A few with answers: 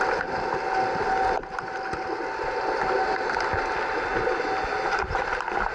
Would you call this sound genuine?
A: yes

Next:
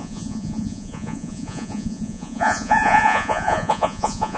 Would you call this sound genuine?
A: no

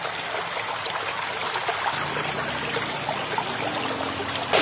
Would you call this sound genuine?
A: yes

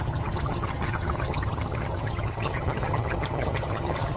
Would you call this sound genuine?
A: no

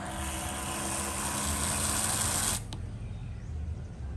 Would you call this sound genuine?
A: yes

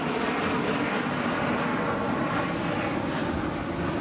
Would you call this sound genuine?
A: yes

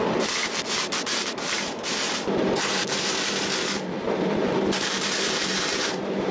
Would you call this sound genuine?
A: no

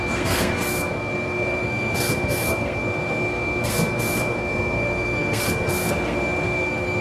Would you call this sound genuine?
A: no